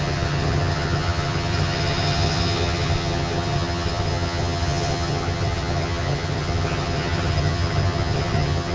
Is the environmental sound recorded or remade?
remade